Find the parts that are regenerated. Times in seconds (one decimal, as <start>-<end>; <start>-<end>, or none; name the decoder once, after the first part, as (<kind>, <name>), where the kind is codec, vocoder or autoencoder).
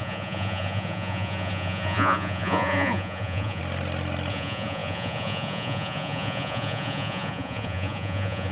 0.0-3.6 (vocoder, Vocos); 4.3-8.5